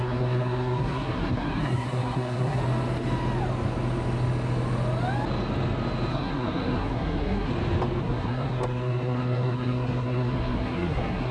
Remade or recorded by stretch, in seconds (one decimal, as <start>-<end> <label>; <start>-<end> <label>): 0.0-2.6 remade; 2.6-6.1 recorded; 6.1-7.5 remade; 7.5-8.0 recorded; 8.0-11.3 remade